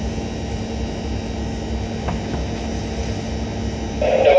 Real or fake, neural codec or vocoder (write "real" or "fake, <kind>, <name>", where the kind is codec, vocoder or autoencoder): real